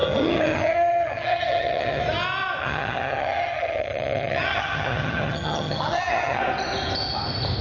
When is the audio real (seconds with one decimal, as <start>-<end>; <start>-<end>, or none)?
2.0-2.6; 6.4-7.6